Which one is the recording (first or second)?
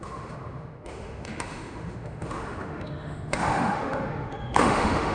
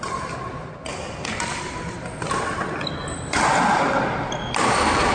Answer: second